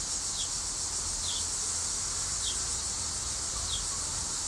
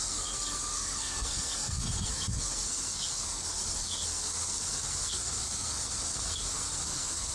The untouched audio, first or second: first